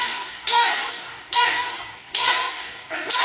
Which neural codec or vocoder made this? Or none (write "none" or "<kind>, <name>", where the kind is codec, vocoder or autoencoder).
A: codec, DAC